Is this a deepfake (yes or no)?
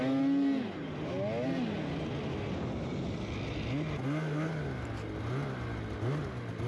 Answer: no